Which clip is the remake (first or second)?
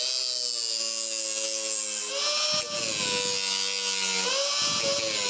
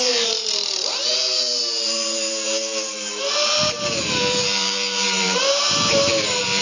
second